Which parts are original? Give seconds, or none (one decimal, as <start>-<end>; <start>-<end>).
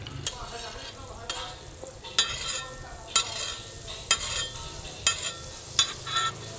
0.0-6.6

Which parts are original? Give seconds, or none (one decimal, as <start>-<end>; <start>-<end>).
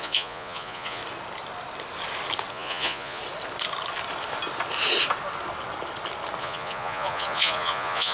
1.0-2.5; 3.2-6.4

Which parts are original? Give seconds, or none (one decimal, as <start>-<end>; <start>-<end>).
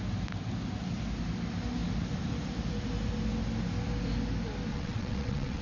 0.0-4.7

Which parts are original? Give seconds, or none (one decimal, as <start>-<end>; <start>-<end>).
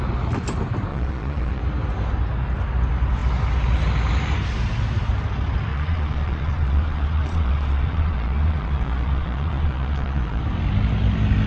0.0-0.9; 1.6-5.7; 10.4-11.5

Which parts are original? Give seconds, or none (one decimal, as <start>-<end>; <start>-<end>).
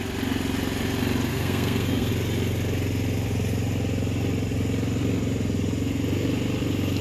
0.0-1.3; 2.1-7.0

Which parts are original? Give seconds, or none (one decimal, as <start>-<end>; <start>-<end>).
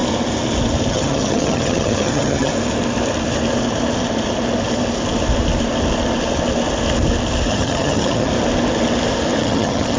0.0-0.9; 2.5-7.5; 8.3-9.4